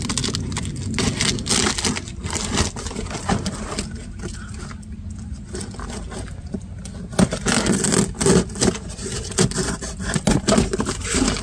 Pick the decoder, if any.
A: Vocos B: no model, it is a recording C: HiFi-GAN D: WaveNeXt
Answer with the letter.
B